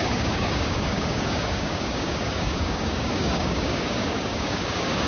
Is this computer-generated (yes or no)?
yes